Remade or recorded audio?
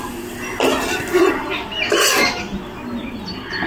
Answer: recorded